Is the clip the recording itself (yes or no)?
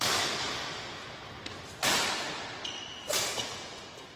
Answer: yes